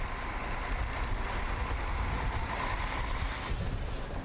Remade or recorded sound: recorded